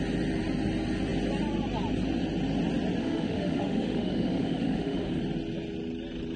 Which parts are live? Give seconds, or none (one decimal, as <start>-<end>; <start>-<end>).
0.0-3.0; 5.2-6.4